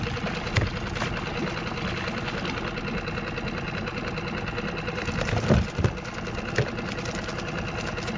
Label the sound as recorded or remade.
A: recorded